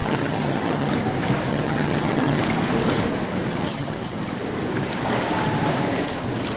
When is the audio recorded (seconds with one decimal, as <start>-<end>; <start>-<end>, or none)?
0.9-1.5; 2.4-3.5; 4.3-6.6